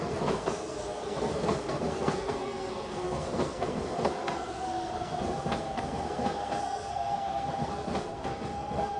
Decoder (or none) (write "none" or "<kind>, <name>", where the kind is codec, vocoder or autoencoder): codec, SNAC